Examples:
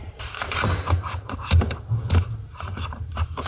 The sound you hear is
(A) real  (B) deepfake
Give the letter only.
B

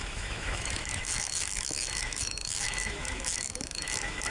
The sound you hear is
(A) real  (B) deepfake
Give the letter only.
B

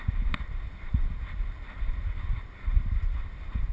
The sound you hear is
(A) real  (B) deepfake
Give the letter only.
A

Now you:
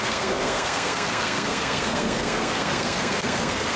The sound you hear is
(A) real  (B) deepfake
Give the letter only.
B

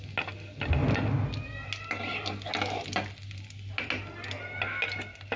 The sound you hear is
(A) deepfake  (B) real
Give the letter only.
B